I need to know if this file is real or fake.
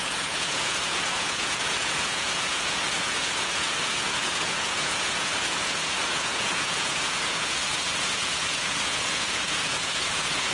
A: fake